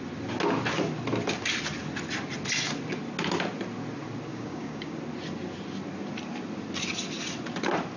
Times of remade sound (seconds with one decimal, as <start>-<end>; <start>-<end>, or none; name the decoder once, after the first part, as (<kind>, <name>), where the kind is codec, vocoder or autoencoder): 4.3-5.0 (codec, DAC)